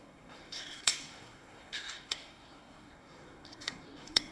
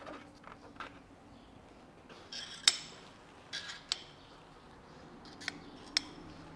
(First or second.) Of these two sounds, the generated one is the first